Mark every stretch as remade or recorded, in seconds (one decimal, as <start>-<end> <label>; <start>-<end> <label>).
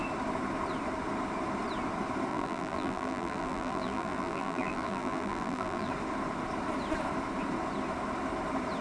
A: 0.0-2.3 recorded; 2.3-5.9 remade; 5.9-8.8 recorded